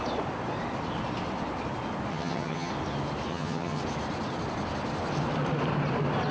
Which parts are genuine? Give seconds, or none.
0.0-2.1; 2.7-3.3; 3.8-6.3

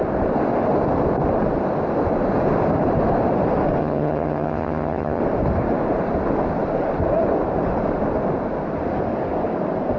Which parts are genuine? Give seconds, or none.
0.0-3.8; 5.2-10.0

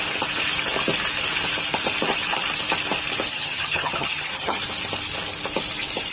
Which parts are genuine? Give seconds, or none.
0.0-3.3; 4.6-6.1